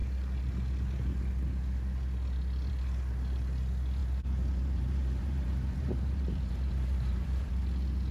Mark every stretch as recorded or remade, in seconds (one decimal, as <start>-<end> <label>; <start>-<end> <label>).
0.0-4.0 recorded; 4.0-7.5 remade; 7.5-8.1 recorded